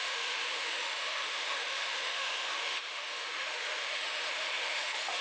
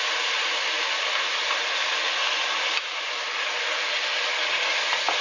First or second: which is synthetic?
first